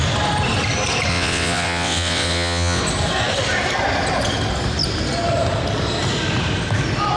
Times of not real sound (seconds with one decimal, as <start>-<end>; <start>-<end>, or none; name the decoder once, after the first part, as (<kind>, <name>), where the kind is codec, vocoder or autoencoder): 1.1-2.8 (vocoder, WaveNeXt)